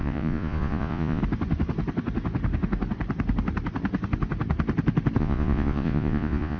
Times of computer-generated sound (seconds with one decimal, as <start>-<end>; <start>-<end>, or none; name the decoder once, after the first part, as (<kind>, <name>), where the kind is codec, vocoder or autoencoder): 0.0-1.2 (vocoder, Vocos); 5.2-6.6